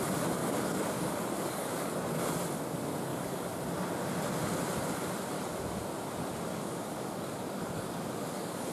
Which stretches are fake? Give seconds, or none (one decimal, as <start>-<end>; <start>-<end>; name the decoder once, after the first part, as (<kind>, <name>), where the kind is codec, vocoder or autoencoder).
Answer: 0.4-2.2 (codec, DAC); 3.1-3.6; 6.5-8.7